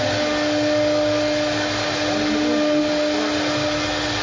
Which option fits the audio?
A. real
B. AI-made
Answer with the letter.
A